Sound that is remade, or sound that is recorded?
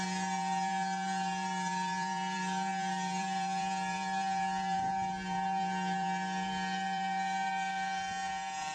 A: remade